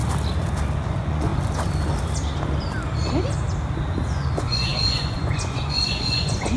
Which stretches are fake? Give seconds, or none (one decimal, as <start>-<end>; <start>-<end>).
0.8-1.3; 4.1-6.6